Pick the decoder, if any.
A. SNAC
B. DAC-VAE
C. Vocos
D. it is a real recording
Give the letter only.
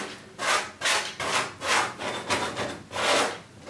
D